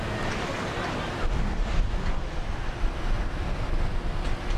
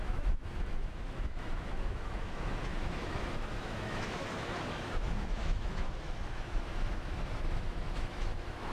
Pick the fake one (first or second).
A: second